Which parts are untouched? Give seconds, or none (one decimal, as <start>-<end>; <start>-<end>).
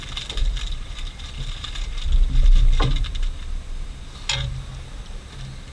0.0-0.4; 2.4-3.1; 4.1-5.7